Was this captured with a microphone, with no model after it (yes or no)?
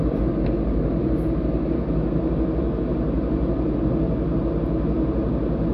yes